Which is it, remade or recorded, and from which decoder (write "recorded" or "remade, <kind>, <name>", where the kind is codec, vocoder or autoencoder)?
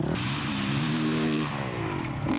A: recorded